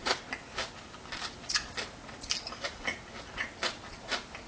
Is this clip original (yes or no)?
yes